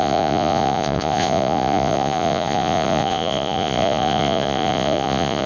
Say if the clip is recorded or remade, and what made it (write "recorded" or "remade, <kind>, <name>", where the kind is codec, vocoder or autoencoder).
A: remade, vocoder, Vocos